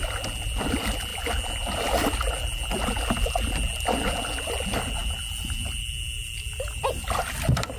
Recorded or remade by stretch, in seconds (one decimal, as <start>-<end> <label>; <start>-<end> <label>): 0.0-7.8 recorded